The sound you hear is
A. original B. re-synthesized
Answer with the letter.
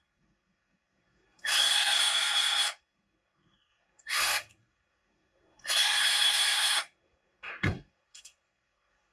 B